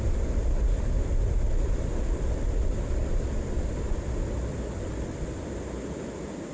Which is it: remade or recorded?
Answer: recorded